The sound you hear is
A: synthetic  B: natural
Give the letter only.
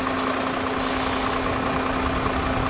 B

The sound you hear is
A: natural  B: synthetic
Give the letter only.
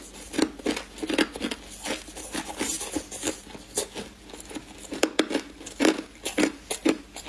A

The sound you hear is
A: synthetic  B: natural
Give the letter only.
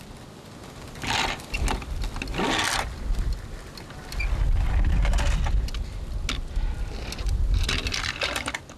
B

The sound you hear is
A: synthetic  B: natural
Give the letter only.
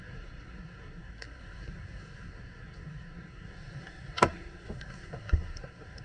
A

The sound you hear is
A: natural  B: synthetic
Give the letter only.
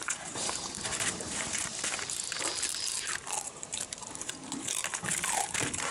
B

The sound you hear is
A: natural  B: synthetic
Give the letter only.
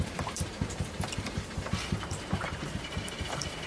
B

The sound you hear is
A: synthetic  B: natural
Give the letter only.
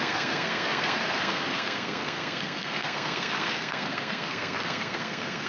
A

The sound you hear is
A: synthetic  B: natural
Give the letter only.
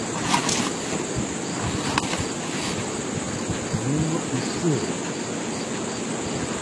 B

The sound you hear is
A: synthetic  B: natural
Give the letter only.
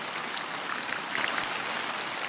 B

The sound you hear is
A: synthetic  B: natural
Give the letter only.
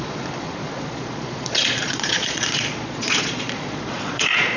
A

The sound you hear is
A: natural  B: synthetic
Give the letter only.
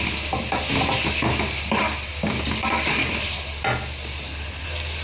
A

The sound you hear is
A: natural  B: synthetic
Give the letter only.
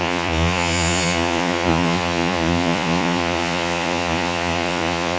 B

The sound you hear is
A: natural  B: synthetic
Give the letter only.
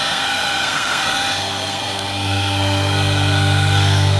B